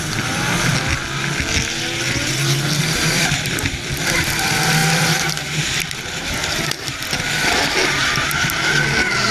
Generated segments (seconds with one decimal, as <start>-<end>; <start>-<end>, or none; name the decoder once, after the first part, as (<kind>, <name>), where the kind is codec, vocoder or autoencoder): 0.0-0.7 (vocoder, BigVGAN v2); 2.8-7.8